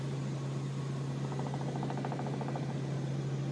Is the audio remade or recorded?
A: recorded